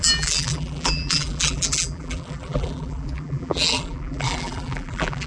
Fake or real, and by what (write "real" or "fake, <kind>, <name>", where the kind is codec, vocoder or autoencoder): fake, vocoder, BigVGAN v2